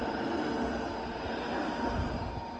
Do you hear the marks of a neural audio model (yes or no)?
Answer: no